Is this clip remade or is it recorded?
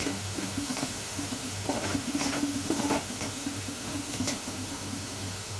remade